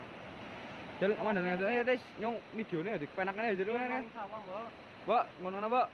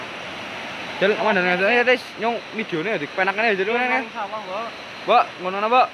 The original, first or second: second